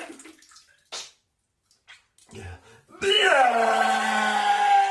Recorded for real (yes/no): yes